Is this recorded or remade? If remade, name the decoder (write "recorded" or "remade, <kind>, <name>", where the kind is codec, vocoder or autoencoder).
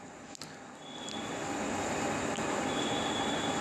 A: recorded